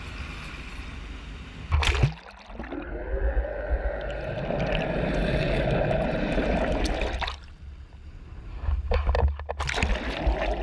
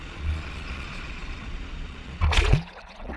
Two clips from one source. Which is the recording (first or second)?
first